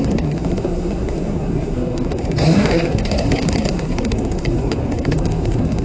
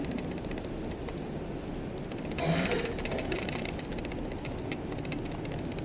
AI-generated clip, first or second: first